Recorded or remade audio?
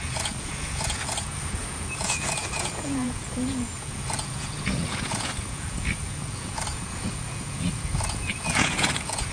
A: remade